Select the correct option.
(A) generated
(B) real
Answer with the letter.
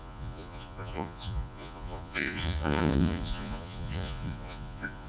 A